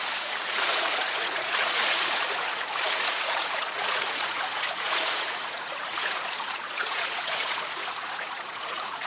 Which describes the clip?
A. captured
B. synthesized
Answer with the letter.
B